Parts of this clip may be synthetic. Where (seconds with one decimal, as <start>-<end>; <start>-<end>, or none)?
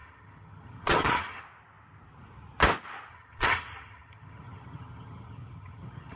0.0-1.4; 3.1-6.2